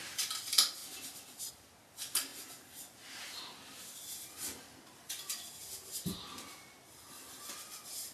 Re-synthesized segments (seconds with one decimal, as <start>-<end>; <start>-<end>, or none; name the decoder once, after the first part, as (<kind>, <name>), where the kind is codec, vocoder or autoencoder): none